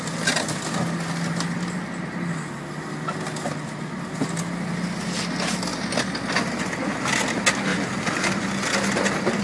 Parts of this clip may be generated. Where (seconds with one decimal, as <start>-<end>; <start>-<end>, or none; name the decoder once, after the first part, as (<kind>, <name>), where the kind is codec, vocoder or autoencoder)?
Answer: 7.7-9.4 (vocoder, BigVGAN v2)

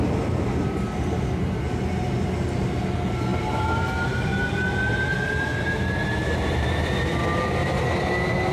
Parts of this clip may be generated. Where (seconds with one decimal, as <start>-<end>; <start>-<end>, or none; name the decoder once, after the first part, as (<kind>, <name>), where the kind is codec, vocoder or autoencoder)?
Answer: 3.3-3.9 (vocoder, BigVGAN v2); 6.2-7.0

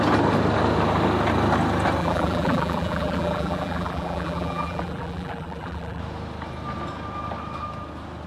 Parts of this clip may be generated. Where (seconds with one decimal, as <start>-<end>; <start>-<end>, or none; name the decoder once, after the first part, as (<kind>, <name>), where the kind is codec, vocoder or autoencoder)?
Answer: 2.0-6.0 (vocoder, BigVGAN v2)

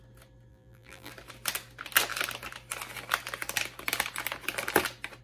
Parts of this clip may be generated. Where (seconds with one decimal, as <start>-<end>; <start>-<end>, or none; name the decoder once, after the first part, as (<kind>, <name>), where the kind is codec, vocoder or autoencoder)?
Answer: 0.5-1.1 (vocoder, BigVGAN v2)

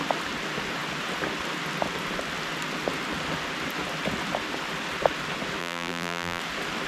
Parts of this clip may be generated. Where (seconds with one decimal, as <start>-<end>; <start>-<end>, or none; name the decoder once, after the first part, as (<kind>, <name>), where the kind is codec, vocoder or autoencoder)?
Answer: 5.6-6.4 (vocoder, BigVGAN v2)

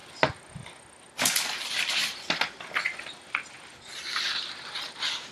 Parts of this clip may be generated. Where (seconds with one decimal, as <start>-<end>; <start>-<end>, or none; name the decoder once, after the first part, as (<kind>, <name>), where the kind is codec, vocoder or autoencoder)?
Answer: 3.9-4.4 (vocoder, BigVGAN v2)